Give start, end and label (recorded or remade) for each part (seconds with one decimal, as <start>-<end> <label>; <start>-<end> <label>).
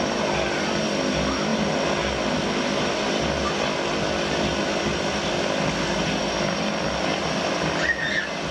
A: 0.0-8.5 recorded